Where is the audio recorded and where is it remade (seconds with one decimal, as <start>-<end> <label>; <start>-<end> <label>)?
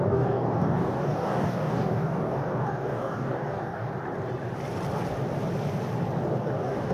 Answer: 0.0-3.9 remade; 3.9-6.4 recorded; 6.4-6.9 remade